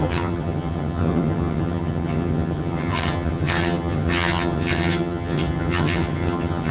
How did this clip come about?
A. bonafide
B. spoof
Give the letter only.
B